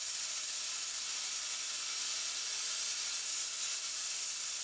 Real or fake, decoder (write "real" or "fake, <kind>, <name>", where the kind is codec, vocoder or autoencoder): real